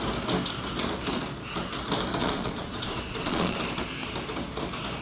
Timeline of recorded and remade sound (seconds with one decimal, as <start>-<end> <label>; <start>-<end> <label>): 0.0-2.2 recorded; 2.2-3.6 remade; 3.6-5.0 recorded